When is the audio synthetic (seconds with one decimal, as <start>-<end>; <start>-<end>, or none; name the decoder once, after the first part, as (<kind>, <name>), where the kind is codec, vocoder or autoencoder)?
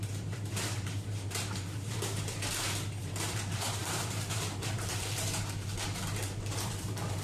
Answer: 0.0-7.2 (vocoder, BigVGAN v2)